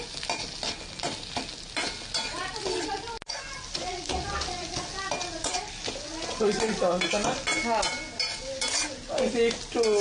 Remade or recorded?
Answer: recorded